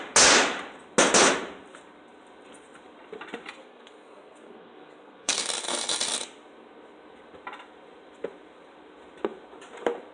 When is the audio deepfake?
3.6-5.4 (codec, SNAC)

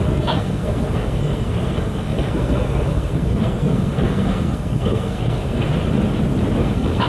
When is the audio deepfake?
0.0-5.7 (codec, SNAC); 6.6-7.1

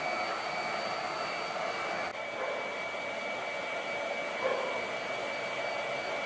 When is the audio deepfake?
none

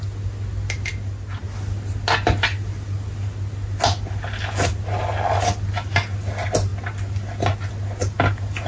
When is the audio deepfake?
none

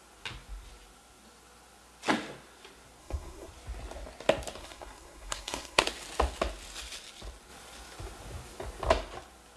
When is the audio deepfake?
3.0-3.5 (codec, SNAC); 4.6-5.8

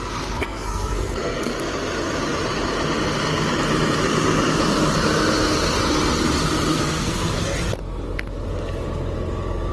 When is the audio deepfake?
0.0-1.5 (codec, SNAC); 6.7-7.4

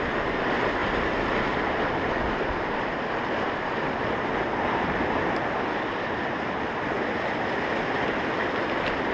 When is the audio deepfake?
none